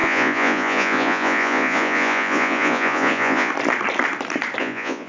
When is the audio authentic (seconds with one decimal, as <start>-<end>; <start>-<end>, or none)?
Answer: 3.5-4.6